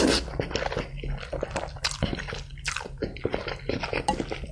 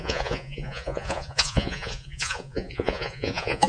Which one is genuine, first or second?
first